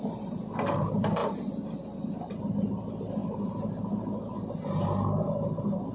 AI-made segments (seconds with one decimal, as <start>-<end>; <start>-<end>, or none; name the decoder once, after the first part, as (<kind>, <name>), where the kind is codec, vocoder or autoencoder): none